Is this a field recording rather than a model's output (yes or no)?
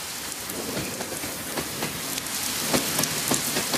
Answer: yes